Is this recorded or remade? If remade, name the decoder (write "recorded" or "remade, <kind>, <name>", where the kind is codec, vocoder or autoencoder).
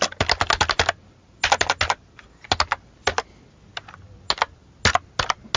recorded